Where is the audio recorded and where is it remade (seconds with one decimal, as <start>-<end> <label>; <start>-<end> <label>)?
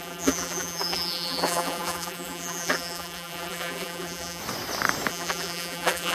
0.0-4.4 remade; 4.4-5.1 recorded; 5.1-6.1 remade